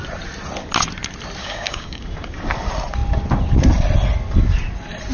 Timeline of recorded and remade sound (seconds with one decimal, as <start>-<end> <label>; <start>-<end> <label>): 0.0-1.4 recorded; 1.4-2.0 remade; 2.0-5.1 recorded

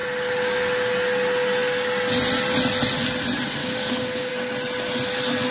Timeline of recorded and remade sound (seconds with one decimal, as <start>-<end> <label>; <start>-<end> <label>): 0.0-3.6 recorded; 3.6-4.3 remade; 4.3-5.5 recorded

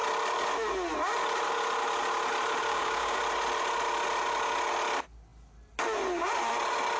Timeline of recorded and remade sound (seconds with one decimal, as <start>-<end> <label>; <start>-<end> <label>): 0.0-2.7 recorded; 2.7-3.2 remade; 3.2-7.0 recorded

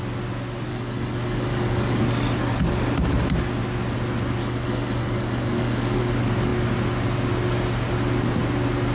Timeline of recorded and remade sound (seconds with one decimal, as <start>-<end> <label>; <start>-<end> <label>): 0.0-0.7 recorded; 0.7-2.0 remade; 2.0-4.4 recorded; 4.4-6.0 remade; 6.0-8.9 recorded

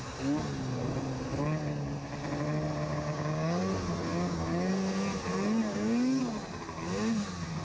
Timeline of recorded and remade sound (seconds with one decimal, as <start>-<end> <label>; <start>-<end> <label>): 0.0-2.9 recorded; 2.9-3.6 remade; 3.6-4.1 recorded; 4.1-4.7 remade; 4.7-5.6 recorded; 5.6-6.2 remade; 6.2-7.6 recorded